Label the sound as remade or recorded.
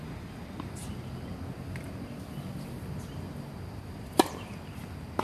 recorded